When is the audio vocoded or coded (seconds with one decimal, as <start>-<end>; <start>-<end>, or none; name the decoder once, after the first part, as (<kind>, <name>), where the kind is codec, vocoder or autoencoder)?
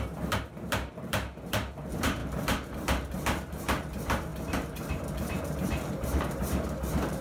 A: 0.0-7.2 (vocoder, BigVGAN v2)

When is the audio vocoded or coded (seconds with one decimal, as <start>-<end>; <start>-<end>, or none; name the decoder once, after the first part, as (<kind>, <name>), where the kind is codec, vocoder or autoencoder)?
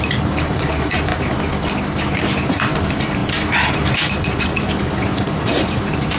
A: 0.0-1.1 (vocoder, BigVGAN v2); 2.1-6.2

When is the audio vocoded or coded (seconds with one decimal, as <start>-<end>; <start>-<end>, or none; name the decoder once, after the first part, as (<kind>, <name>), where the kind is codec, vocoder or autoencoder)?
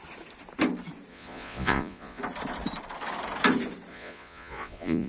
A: 1.1-2.2 (vocoder, Vocos); 3.9-5.1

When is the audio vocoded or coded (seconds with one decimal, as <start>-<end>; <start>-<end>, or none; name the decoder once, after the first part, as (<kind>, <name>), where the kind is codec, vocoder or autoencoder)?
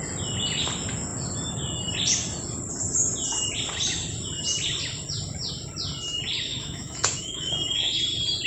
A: 6.5-8.0 (autoencoder, DAC-VAE)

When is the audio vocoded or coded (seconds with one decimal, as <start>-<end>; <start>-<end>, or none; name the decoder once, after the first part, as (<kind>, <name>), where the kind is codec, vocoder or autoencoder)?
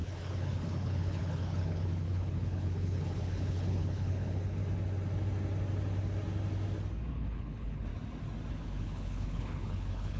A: 0.0-4.6 (codec, HILCodec); 7.1-7.9; 8.5-10.2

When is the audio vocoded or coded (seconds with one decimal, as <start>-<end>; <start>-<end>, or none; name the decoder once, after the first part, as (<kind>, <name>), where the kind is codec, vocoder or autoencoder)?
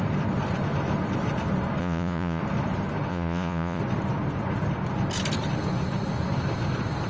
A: 1.8-2.4 (vocoder, Vocos); 3.1-3.8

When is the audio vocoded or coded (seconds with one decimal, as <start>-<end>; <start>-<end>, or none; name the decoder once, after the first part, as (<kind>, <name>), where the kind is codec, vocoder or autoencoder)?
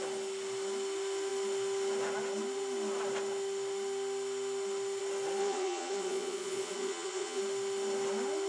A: 5.4-7.4 (vocoder, Vocos)